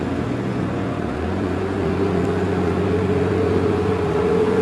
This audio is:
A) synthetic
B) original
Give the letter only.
A